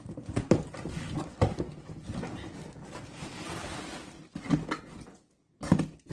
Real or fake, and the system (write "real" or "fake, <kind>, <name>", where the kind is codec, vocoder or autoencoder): real